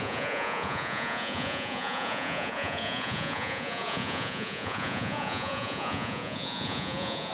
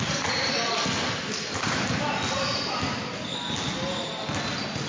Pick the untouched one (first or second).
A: second